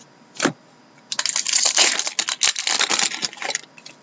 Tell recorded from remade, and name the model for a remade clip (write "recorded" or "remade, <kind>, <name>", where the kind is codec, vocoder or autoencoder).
recorded